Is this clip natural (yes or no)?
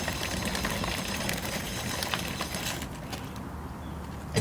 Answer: yes